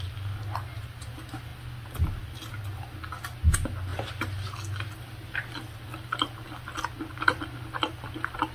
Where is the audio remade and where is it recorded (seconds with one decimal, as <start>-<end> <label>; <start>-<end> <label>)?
0.0-8.5 recorded